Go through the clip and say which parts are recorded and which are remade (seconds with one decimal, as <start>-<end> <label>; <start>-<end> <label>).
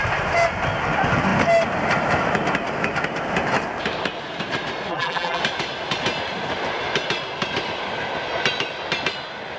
0.0-4.9 recorded; 4.9-5.4 remade; 5.4-9.6 recorded